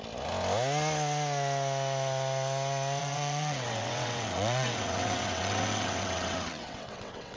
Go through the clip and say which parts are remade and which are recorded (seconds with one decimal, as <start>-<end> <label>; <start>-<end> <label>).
0.0-3.0 recorded; 3.0-7.4 remade